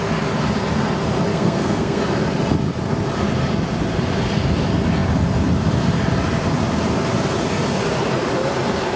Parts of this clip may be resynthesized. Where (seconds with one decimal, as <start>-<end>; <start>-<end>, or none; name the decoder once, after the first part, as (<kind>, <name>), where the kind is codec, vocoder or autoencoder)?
1.3-2.0 (codec, SNAC)